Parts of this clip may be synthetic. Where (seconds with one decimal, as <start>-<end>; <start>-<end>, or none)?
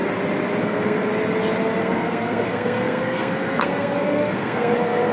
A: 0.6-1.1; 1.8-5.1